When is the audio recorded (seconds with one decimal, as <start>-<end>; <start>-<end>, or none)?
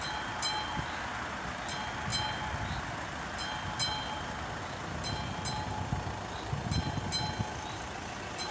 0.0-8.5